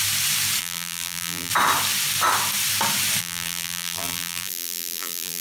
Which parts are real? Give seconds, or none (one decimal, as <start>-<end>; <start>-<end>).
0.0-0.6; 1.5-3.2